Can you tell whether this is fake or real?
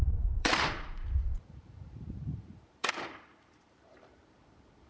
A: fake